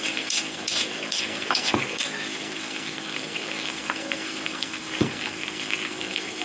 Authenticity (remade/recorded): remade